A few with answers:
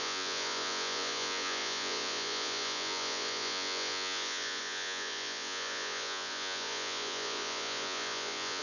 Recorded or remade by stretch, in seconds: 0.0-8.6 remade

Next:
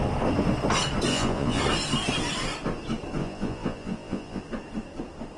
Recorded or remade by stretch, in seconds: 0.0-1.1 recorded; 1.1-1.6 remade; 1.6-3.2 recorded; 3.2-4.4 remade; 4.4-5.4 recorded

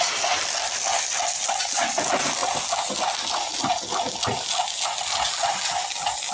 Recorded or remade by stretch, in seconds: 0.0-6.3 recorded

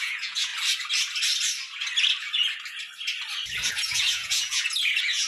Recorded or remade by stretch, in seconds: 0.0-0.5 remade; 0.5-3.7 recorded; 3.7-5.3 remade

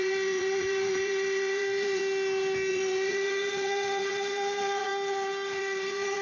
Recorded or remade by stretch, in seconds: 0.0-2.0 remade; 2.0-2.7 recorded; 2.7-4.9 remade; 4.9-5.6 recorded; 5.6-6.2 remade

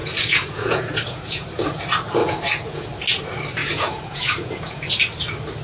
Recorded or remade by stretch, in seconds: 0.0-1.5 remade; 1.5-2.2 recorded; 2.2-2.9 remade; 2.9-3.6 recorded; 3.6-4.9 remade; 4.9-5.6 recorded

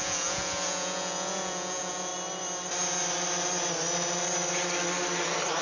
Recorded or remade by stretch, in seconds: 0.0-2.1 remade; 2.1-5.6 recorded